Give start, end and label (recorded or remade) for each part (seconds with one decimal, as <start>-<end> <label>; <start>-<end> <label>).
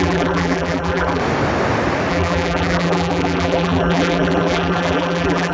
0.0-1.2 remade; 1.2-2.1 recorded; 2.1-5.5 remade